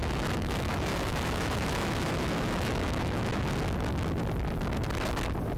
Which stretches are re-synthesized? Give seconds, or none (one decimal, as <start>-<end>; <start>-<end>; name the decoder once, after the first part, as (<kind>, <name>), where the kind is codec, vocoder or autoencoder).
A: 0.0-3.4 (autoencoder, DAC-VAE)